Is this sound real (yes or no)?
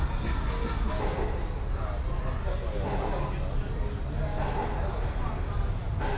yes